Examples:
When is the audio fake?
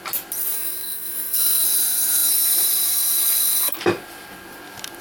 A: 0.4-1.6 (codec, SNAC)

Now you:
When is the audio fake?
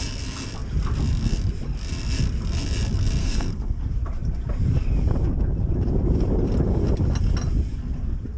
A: 3.2-3.8 (codec, SNAC)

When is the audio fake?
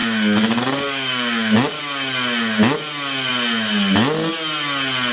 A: 0.0-1.8 (codec, DAC)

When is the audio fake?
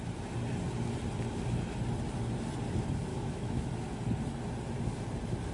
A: 3.1-3.7 (autoencoder, DAC-VAE)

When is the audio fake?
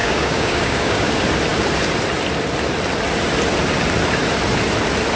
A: 0.0-1.1 (codec, DAC)